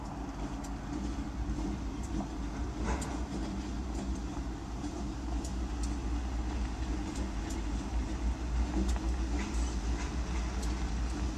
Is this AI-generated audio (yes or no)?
no